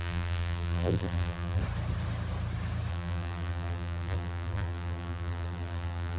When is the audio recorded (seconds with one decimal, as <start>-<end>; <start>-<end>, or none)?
1.6-2.9